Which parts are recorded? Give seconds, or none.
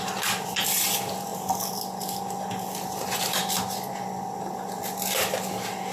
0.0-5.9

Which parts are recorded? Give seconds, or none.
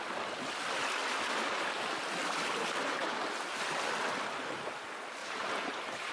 0.0-5.2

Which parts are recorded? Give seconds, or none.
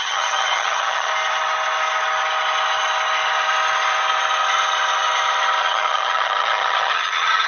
1.1-5.6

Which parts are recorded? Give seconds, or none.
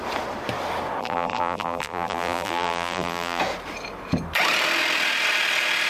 0.0-1.0; 3.4-5.9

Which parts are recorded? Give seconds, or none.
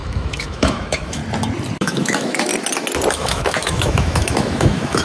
1.2-1.8; 2.5-3.1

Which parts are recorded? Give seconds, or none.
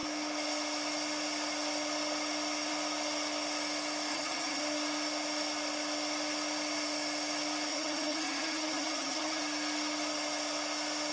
0.0-4.1; 4.6-7.7; 9.4-11.1